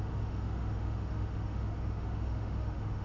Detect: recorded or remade remade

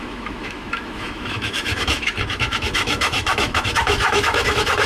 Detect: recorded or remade remade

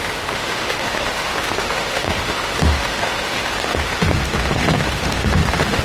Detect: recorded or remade remade